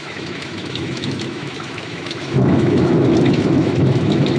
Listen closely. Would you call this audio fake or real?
fake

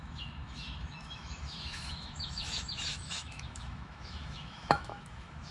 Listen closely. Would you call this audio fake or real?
fake